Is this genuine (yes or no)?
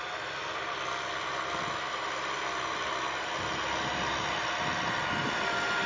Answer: yes